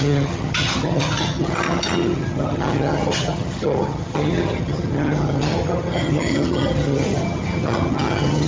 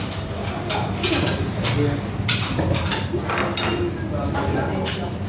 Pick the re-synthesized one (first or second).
first